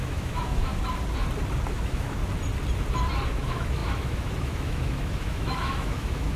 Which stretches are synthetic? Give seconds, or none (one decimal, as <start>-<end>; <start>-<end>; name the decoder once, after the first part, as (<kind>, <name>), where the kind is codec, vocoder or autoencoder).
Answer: 0.0-0.7 (autoencoder, DAC-VAE); 1.7-2.2; 3.3-6.4